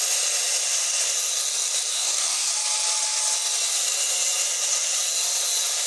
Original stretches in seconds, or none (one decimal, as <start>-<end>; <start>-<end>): 0.0-1.9; 2.5-5.9